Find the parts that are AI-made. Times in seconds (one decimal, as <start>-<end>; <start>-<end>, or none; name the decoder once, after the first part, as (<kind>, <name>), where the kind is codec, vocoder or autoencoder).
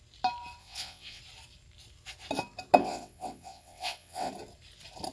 0.6-1.2 (vocoder, WaveNeXt); 2.8-4.3